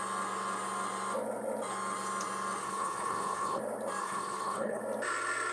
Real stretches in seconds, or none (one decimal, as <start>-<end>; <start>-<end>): 0.0-2.6; 3.6-4.0; 4.8-5.5